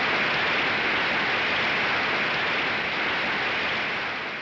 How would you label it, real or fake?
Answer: real